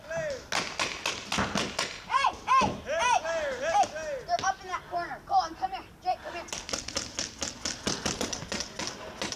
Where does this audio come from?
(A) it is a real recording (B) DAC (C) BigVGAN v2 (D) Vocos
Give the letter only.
A